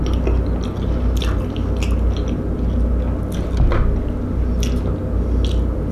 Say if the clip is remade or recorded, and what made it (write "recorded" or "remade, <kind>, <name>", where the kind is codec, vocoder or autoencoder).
recorded